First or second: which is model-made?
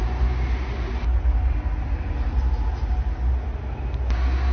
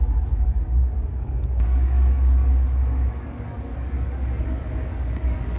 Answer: second